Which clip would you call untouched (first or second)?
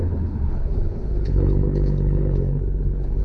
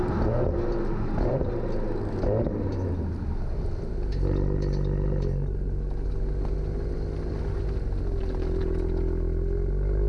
second